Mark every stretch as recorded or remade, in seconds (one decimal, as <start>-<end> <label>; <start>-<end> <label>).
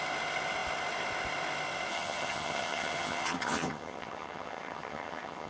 0.0-1.9 recorded; 1.9-5.5 remade